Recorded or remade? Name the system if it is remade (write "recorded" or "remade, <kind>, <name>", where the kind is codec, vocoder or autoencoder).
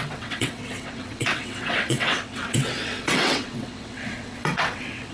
remade, vocoder, WaveNeXt